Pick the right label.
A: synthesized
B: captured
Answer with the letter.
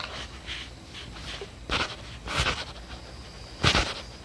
B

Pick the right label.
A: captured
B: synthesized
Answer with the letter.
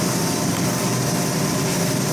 A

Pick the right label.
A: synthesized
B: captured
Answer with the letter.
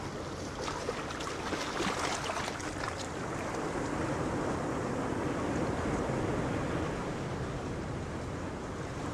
B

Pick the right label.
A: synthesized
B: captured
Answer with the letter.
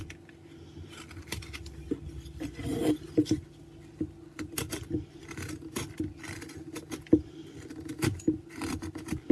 B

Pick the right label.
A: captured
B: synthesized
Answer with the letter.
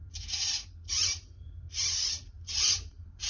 B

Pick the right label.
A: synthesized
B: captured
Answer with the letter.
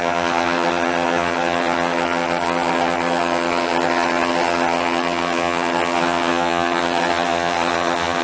A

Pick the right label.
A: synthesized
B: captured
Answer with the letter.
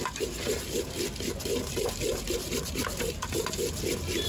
B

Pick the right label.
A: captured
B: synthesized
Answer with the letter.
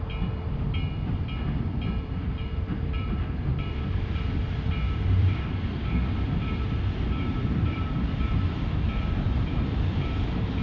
B